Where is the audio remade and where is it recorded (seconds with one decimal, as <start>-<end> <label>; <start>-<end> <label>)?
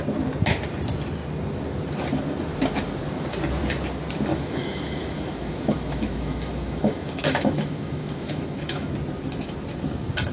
0.0-4.3 recorded; 4.3-8.9 remade; 8.9-10.3 recorded